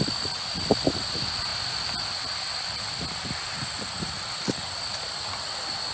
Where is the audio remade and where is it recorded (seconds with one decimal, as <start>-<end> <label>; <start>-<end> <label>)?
0.0-5.9 recorded